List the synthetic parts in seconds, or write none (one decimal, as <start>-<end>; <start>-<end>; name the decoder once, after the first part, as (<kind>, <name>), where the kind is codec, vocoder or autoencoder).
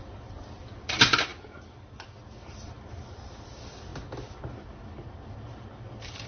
0.0-1.3 (vocoder, BigVGAN v2); 2.5-3.9; 5.2-6.3